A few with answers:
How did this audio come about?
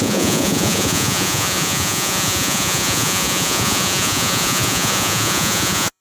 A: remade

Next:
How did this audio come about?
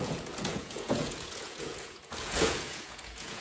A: remade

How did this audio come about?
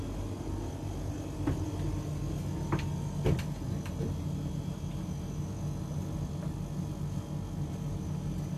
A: recorded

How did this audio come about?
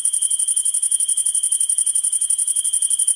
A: recorded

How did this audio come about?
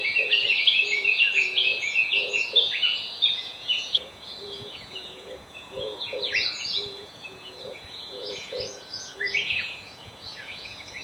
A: remade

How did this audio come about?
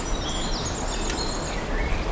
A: recorded